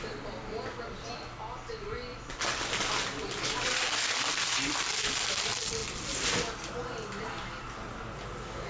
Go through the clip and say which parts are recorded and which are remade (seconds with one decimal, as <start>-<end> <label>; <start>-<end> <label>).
0.0-8.7 recorded